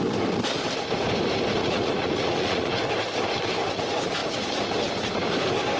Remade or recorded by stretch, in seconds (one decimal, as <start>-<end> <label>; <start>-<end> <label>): 0.0-1.6 recorded; 1.6-2.8 remade; 2.8-5.8 recorded